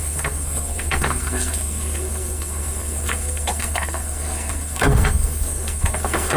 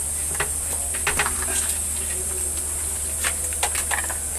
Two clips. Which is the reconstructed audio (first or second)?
first